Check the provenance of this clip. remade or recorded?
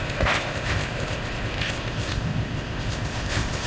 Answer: remade